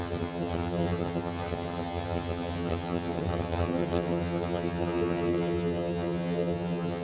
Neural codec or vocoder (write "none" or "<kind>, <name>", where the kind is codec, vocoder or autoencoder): vocoder, HiFi-GAN